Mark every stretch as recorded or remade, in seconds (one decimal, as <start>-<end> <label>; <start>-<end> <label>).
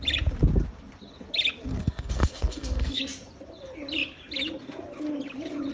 0.0-1.7 recorded; 1.7-3.0 remade; 3.0-5.7 recorded